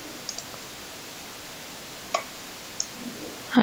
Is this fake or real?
real